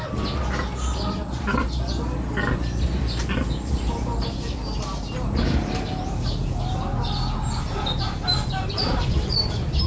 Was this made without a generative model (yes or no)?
yes